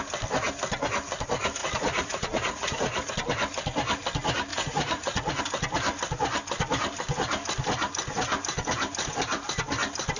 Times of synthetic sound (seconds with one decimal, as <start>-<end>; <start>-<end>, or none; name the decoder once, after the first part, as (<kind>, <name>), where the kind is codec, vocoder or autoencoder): 1.6-3.1 (vocoder, Vocos); 4.5-5.4